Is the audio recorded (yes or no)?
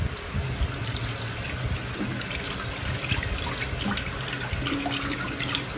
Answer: yes